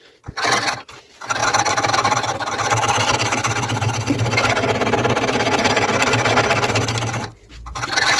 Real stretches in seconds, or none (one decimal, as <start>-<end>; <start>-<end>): 0.0-8.2

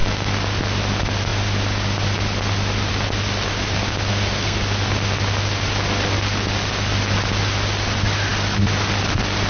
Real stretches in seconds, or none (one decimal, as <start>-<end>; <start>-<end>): 0.0-4.1; 4.6-9.5